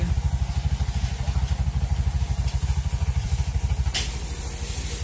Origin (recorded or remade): recorded